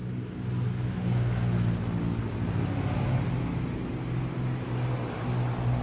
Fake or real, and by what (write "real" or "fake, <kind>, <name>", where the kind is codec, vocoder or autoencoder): real